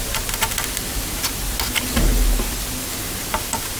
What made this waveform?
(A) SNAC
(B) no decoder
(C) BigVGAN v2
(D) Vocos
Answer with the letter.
C